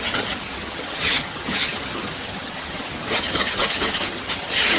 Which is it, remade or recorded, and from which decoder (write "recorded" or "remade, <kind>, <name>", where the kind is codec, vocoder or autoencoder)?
remade, vocoder, HiFi-GAN